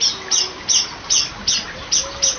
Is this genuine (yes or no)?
yes